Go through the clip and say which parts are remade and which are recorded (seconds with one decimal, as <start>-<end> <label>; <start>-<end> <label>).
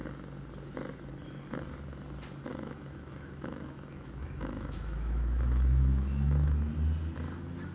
0.0-2.5 recorded; 2.5-6.7 remade; 6.7-7.7 recorded